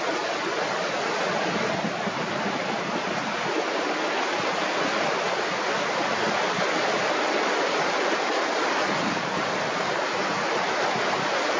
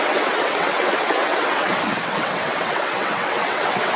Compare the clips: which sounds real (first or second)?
first